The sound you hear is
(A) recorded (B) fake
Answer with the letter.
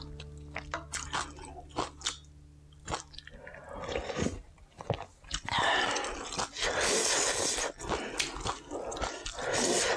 A